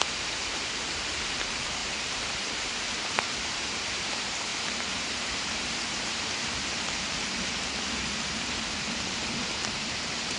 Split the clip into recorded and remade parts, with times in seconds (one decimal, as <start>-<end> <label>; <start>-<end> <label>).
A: 0.0-10.4 remade